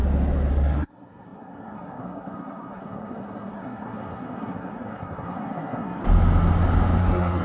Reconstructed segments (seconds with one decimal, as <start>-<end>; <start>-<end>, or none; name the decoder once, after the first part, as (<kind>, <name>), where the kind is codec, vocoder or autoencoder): 0.5-6.0 (codec, SNAC); 7.0-7.4